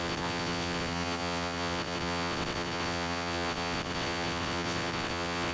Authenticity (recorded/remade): remade